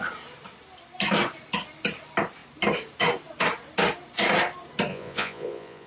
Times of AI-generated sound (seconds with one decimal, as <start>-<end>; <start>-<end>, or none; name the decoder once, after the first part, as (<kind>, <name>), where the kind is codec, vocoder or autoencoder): 4.9-5.9 (vocoder, Vocos)